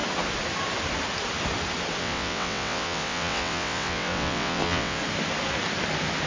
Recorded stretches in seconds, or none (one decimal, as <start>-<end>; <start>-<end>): 0.0-2.0; 5.0-6.3